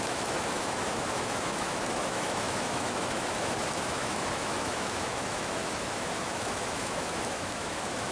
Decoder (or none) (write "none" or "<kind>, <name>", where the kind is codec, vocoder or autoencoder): autoencoder, DAC-VAE